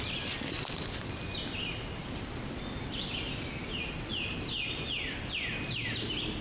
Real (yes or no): yes